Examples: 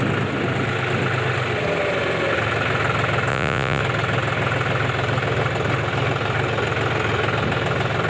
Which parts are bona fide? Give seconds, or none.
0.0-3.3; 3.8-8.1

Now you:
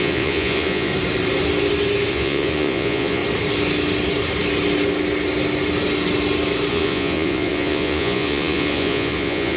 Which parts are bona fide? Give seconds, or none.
0.9-2.1; 3.2-6.7